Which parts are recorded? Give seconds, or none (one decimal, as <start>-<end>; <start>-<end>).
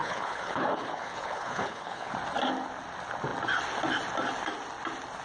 2.1-5.2